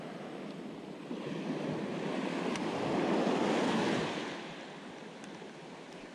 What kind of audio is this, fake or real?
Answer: real